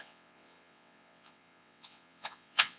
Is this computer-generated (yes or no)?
yes